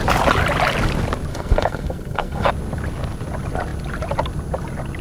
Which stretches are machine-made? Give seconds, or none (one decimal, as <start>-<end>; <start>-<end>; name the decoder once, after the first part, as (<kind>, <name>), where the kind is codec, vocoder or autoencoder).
1.3-2.5 (codec, SNAC)